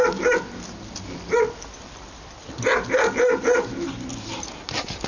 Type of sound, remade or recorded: recorded